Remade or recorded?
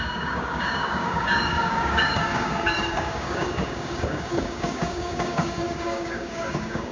remade